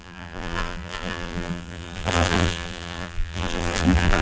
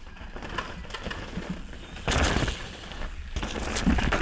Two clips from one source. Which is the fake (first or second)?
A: first